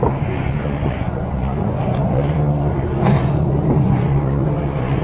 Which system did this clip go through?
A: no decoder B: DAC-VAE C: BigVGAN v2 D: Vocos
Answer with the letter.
D